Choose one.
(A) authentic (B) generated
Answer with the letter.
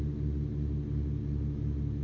A